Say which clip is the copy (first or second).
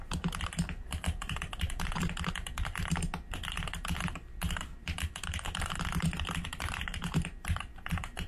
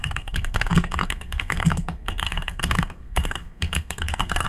second